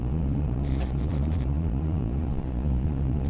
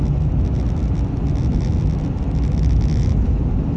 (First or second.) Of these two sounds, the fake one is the first